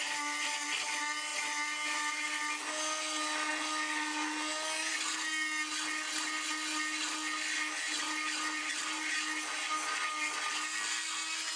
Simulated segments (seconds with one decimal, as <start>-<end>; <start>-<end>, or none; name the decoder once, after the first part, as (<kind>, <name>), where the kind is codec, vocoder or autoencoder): none